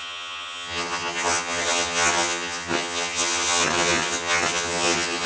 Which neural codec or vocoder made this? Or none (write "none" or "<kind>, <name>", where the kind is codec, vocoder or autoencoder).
vocoder, HiFi-GAN